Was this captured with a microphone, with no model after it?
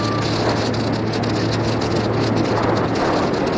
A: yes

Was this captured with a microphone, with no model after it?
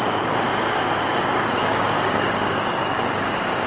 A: no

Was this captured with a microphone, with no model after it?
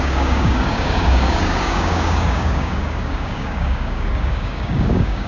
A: no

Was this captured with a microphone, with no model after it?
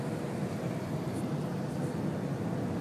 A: yes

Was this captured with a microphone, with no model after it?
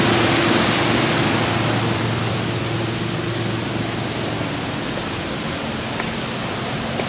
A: yes